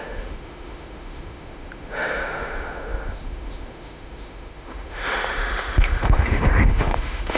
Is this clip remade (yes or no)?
yes